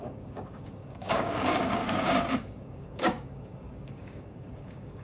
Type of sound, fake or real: fake